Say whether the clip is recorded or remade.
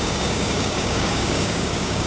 remade